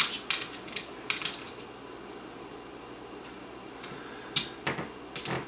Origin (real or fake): real